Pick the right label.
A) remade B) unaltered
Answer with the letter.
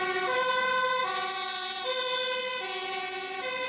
B